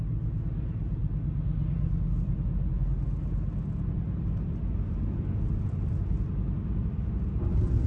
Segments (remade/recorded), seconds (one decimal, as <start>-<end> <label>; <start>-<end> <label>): 0.0-7.9 recorded